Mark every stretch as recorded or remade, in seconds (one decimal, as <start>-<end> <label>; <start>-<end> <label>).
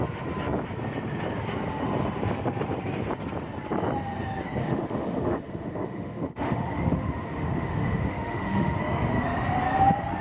0.0-4.6 recorded; 4.6-8.8 remade; 8.8-10.2 recorded